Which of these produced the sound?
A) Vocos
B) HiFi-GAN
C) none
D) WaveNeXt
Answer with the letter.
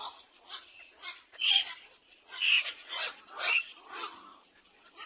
A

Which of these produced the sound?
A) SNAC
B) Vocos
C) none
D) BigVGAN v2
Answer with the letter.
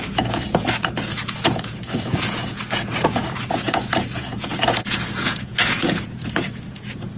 B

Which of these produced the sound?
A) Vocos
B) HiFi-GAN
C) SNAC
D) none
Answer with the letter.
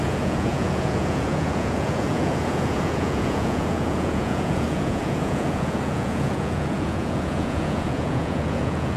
A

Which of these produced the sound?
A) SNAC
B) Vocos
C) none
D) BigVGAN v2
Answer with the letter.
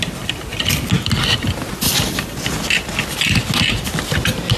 C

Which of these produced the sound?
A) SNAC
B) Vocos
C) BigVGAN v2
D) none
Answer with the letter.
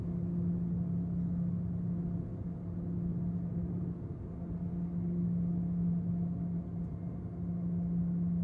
D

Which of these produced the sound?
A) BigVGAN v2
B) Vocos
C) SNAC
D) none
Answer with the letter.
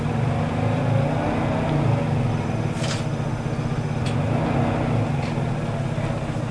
D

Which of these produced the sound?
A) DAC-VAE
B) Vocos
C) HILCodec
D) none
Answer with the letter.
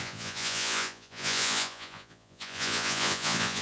B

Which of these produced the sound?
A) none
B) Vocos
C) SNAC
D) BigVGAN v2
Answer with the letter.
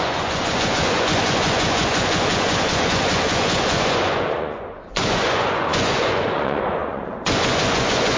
B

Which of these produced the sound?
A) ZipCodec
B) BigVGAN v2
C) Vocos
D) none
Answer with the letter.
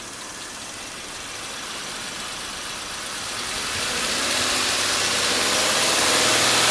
D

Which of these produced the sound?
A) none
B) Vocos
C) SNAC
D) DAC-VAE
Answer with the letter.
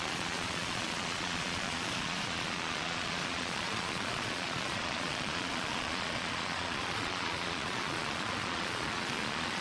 B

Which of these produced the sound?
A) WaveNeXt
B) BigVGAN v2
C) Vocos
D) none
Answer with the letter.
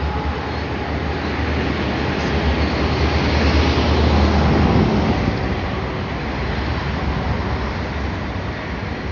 D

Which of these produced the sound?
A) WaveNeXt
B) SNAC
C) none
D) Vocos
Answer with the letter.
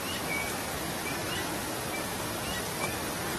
C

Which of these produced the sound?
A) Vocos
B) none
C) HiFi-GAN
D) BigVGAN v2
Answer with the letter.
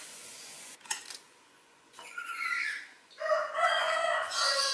A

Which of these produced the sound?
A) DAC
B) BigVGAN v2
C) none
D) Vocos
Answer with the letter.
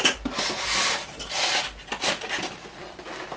C